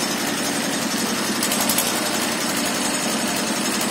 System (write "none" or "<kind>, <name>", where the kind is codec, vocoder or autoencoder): none